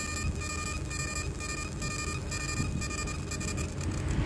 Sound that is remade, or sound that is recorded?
recorded